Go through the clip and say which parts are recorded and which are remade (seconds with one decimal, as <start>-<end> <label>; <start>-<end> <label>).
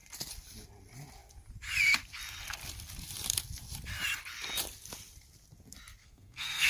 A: 0.0-6.0 recorded; 6.0-6.7 remade